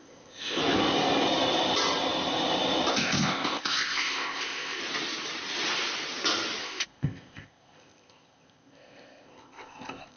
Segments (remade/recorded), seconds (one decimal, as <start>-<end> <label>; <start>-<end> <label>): 0.0-0.6 remade; 0.6-2.9 recorded; 2.9-4.8 remade; 4.8-6.6 recorded; 6.6-10.2 remade